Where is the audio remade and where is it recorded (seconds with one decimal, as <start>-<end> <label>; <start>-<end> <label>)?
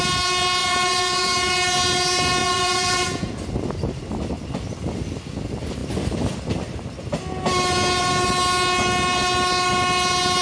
0.0-0.6 recorded; 0.6-1.5 remade; 1.5-2.4 recorded; 2.4-3.3 remade; 3.3-10.4 recorded